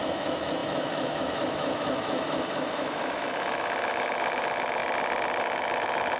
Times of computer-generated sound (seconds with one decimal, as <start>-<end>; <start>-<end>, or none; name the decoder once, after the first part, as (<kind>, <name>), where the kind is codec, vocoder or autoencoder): 0.0-4.8 (autoencoder, DAC-VAE); 5.4-6.2

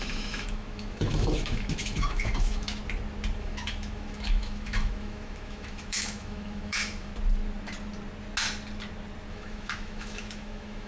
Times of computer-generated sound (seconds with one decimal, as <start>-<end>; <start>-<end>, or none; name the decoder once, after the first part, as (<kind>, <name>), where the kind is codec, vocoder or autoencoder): 0.0-2.8 (autoencoder, DAC-VAE); 3.4-7.1; 9.3-10.9

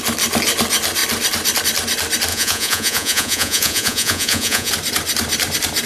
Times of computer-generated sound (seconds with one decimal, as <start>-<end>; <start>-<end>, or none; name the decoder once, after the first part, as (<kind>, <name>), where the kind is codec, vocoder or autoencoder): 2.3-4.7 (vocoder, Vocos)

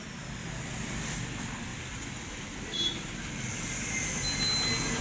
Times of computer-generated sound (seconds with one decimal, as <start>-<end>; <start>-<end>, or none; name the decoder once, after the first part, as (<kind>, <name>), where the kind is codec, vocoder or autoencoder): none

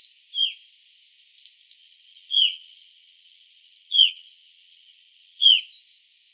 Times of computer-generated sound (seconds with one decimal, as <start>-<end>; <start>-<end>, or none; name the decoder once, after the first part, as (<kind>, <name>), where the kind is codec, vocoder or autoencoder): 1.8-5.6 (vocoder, Vocos)

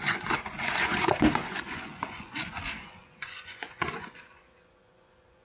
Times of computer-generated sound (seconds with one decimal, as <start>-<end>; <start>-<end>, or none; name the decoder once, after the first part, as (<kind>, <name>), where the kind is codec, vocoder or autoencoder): 0.0-5.4 (vocoder, Vocos)

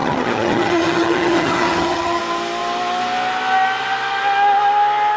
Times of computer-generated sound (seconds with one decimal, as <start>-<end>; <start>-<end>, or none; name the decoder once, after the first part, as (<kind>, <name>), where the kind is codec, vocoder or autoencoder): 0.0-2.2 (vocoder, HiFi-GAN)

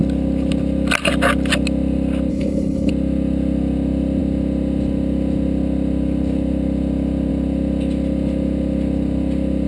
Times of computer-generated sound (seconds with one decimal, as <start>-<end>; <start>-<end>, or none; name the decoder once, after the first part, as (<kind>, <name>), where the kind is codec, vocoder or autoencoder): 2.3-2.9 (codec, HILCodec)